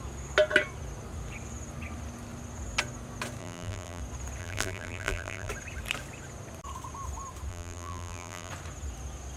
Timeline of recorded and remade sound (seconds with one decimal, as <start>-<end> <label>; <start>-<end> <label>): 0.0-3.4 recorded; 3.4-4.0 remade; 4.0-4.4 recorded; 4.4-5.5 remade; 5.5-7.5 recorded; 7.5-8.5 remade; 8.5-9.4 recorded